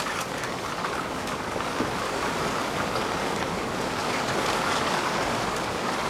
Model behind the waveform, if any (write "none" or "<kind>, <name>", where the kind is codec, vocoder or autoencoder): codec, DAC